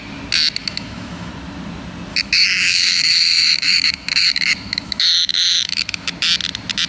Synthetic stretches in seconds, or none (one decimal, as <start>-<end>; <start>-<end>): 0.6-1.3; 2.1-6.1